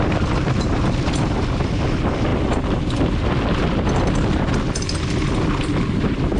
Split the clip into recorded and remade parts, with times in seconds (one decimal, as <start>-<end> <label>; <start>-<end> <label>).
0.0-6.4 recorded